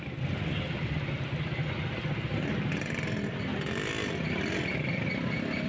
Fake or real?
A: real